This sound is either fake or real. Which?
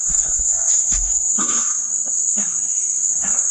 fake